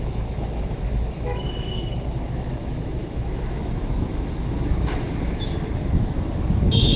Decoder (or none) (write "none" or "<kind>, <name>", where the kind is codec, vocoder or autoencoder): autoencoder, DAC-VAE